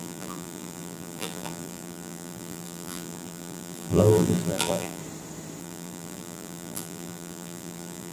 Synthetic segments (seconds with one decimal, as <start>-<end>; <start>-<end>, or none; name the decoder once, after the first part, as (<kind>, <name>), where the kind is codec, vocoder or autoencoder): 0.0-5.0 (vocoder, BigVGAN v2); 5.6-8.1